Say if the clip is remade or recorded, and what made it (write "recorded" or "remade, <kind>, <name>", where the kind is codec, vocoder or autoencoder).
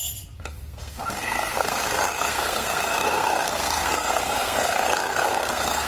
remade, codec, SNAC